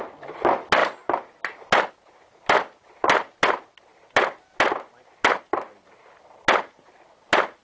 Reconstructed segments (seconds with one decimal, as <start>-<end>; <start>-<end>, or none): none